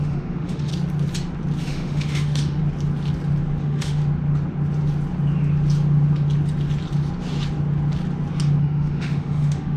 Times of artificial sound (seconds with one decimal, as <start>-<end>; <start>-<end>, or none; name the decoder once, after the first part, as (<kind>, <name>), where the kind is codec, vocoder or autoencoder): 0.0-0.7 (autoencoder, DAC-VAE); 1.6-2.6; 3.6-4.0; 8.6-9.8